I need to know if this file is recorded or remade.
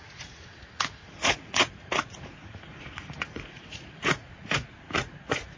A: remade